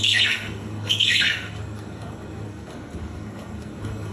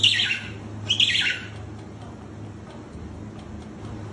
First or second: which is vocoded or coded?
first